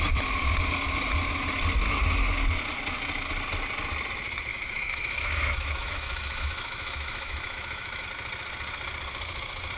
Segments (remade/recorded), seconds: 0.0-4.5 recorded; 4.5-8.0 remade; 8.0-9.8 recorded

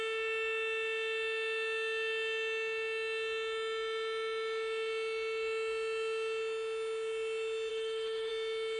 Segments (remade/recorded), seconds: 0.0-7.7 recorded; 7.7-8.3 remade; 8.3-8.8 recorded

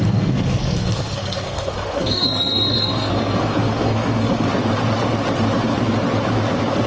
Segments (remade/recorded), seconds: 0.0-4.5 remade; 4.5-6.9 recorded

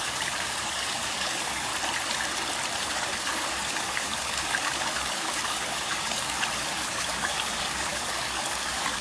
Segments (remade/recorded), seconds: 0.0-1.7 remade; 1.7-2.8 recorded; 2.8-9.0 remade